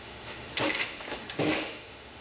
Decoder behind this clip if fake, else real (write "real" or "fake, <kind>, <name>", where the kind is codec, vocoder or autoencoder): fake, autoencoder, DAC-VAE